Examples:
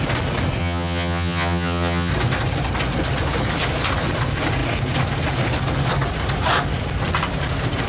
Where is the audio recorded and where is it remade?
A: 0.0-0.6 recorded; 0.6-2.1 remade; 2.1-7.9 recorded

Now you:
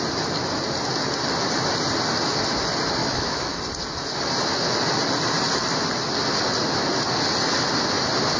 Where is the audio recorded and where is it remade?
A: 0.0-3.0 recorded; 3.0-3.6 remade; 3.6-8.4 recorded

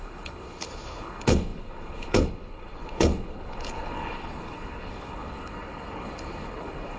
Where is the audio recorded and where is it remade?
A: 0.0-7.0 remade

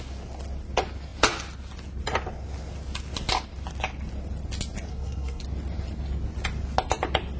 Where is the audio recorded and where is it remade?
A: 0.0-4.9 recorded; 4.9-5.4 remade; 5.4-7.4 recorded

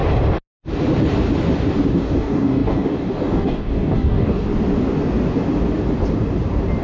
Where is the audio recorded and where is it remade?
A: 0.0-1.9 recorded; 1.9-4.5 remade; 4.5-6.8 recorded